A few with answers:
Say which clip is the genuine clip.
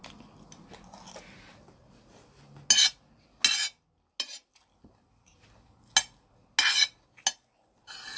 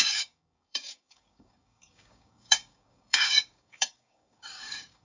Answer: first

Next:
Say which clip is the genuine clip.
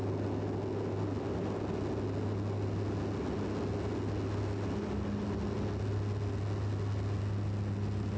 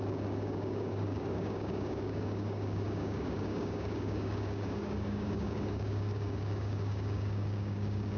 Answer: first